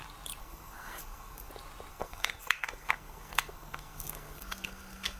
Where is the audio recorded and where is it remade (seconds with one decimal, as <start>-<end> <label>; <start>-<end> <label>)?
0.0-0.4 recorded; 0.4-1.5 remade; 1.5-1.9 recorded; 1.9-5.2 remade